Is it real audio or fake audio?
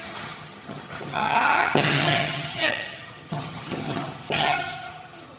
fake